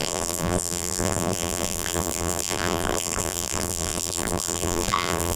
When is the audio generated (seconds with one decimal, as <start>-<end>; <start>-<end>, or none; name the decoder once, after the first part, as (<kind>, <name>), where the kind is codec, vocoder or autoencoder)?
0.0-5.4 (vocoder, BigVGAN v2)

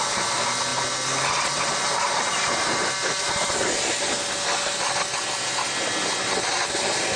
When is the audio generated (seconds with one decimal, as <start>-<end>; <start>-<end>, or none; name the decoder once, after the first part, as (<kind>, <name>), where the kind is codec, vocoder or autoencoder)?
none

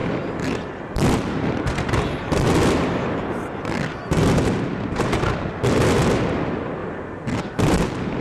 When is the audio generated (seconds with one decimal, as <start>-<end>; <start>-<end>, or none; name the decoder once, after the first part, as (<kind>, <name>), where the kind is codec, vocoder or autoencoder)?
0.0-3.0 (vocoder, BigVGAN v2); 6.8-8.2

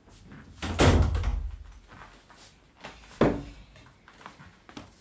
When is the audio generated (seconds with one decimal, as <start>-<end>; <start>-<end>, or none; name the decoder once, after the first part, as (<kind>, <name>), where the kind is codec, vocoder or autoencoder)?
none

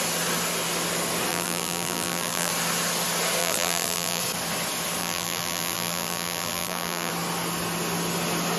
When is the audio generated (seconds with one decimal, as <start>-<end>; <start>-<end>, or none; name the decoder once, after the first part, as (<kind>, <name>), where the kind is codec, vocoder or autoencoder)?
1.3-2.5 (vocoder, BigVGAN v2); 3.4-4.2; 5.0-7.1

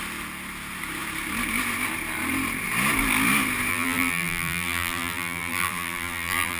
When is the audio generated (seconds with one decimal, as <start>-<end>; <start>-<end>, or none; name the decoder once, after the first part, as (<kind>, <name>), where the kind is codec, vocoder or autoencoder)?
3.7-6.6 (vocoder, BigVGAN v2)

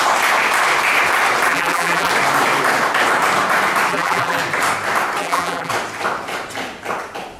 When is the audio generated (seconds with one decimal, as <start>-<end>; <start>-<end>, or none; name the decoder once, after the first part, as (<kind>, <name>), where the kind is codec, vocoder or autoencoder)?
1.5-2.1 (vocoder, BigVGAN v2); 3.9-4.4; 5.2-5.7